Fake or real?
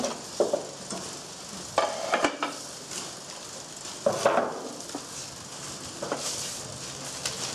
real